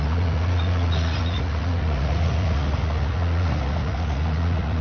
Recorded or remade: remade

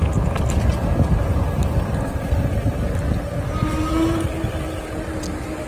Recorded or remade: recorded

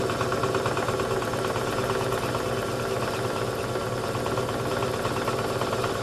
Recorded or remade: recorded